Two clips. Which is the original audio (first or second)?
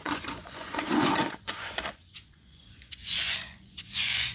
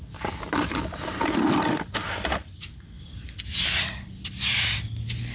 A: second